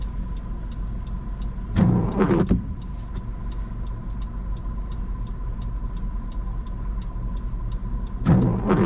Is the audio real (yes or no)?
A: yes